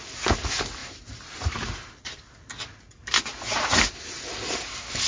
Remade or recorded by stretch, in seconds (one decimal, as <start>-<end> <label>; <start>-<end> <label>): 0.0-0.8 recorded; 0.8-2.3 remade; 2.3-5.1 recorded